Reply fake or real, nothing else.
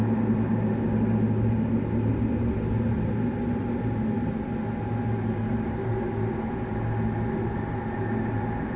real